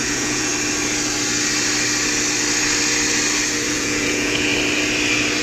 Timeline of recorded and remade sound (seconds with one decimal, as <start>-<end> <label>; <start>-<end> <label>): 0.0-0.5 remade; 0.5-3.7 recorded; 3.7-4.5 remade; 4.5-5.4 recorded